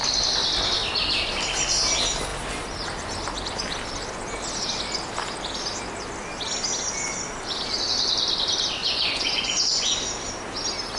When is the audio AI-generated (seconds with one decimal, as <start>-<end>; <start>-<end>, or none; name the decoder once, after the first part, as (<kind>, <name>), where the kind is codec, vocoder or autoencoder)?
8.8-9.9 (vocoder, Vocos)